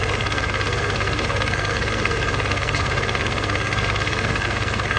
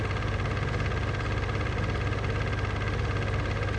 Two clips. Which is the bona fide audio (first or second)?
second